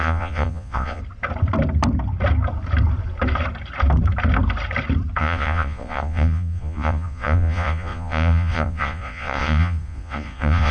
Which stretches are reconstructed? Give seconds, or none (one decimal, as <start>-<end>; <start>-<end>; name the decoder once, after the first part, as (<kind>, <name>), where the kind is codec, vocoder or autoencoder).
0.0-1.0 (vocoder, Vocos); 5.2-10.7